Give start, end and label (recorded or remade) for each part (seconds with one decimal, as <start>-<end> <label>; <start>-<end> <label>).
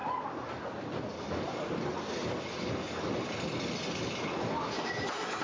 0.0-5.4 recorded